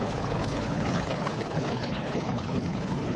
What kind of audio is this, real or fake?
fake